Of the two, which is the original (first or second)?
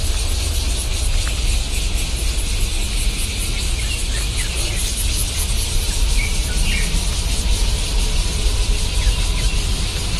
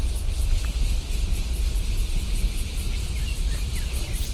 first